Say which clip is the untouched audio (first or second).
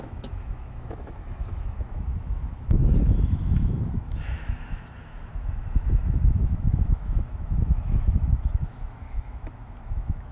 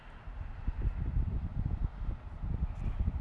second